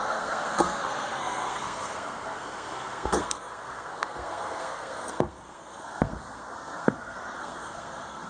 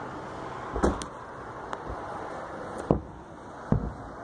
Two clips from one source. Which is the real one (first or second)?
second